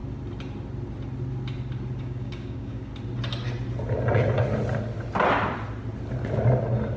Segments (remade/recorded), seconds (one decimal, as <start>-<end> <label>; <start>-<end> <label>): 0.0-2.0 recorded; 2.0-2.9 remade; 2.9-7.0 recorded